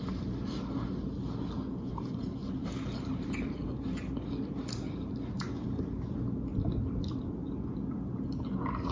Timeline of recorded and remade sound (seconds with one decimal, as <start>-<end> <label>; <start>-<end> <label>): 0.0-2.6 recorded; 2.6-4.1 remade; 4.1-8.9 recorded